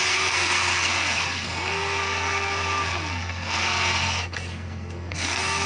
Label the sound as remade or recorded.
remade